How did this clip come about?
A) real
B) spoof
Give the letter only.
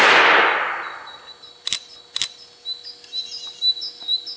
A